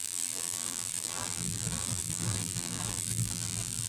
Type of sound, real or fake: fake